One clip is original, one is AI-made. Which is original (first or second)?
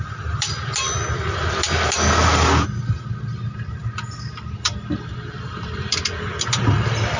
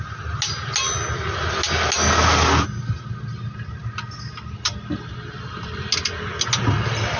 second